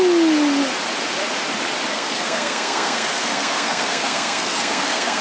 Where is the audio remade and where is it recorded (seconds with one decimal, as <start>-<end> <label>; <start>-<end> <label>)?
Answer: 0.0-1.9 recorded; 1.9-5.2 remade